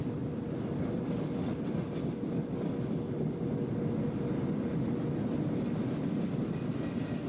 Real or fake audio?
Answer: real